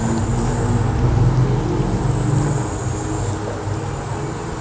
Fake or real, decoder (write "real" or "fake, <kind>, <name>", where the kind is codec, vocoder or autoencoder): real